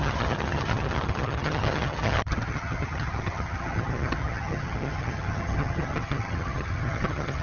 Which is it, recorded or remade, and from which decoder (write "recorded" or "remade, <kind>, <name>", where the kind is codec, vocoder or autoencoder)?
remade, vocoder, HiFi-GAN